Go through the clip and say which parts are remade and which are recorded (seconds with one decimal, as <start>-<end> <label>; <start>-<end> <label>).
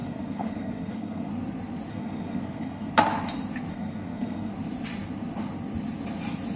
0.0-1.3 remade; 1.3-1.9 recorded; 1.9-2.9 remade; 2.9-3.7 recorded; 3.7-4.5 remade; 4.5-6.6 recorded